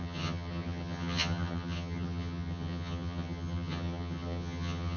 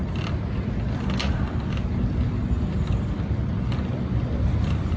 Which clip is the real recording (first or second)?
second